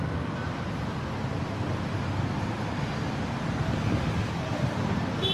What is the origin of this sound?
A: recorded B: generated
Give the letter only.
A